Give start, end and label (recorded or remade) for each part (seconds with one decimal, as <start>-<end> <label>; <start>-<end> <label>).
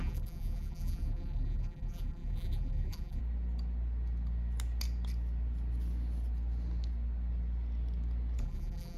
0.0-3.2 remade; 3.2-8.4 recorded; 8.4-9.0 remade